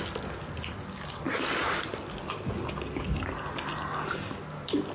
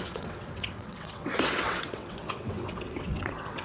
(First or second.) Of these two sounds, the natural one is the first